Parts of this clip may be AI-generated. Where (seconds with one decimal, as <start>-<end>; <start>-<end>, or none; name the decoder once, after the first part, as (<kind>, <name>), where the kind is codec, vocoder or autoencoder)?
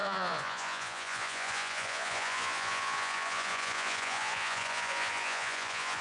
0.0-6.0 (vocoder, Vocos)